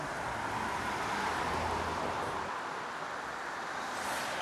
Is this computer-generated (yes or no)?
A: yes